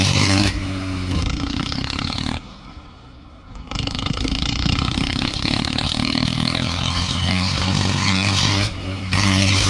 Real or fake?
fake